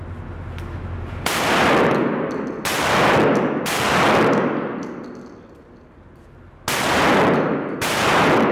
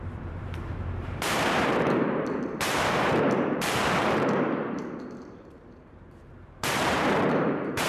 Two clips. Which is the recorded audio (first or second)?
first